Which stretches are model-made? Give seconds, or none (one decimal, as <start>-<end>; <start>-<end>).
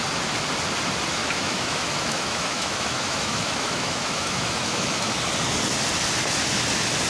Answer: 1.2-5.2